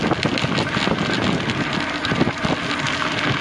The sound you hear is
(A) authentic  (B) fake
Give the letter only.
A